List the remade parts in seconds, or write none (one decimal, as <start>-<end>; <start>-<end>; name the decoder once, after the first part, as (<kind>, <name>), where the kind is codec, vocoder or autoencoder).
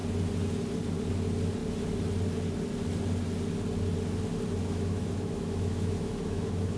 4.6-6.8 (autoencoder, DAC-VAE)